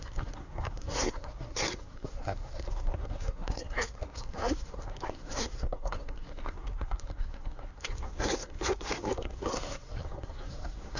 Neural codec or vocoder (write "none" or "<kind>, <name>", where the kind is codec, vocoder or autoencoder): codec, SNAC